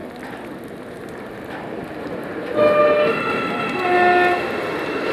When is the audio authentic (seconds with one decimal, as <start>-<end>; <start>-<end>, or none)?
0.0-5.1

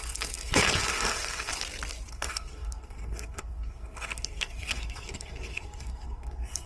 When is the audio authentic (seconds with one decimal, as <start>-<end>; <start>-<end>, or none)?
1.5-2.1